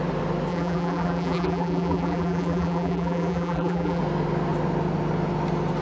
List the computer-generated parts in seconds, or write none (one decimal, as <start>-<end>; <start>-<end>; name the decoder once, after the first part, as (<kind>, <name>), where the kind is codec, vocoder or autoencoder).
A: 0.5-4.0 (vocoder, BigVGAN v2)